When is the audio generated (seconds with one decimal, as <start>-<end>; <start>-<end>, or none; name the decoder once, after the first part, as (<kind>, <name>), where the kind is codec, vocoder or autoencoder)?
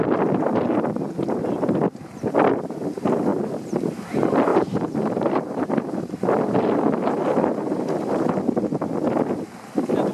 3.3-3.8 (vocoder, BigVGAN v2); 4.5-6.1